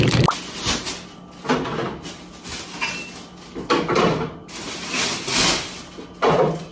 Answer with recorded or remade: recorded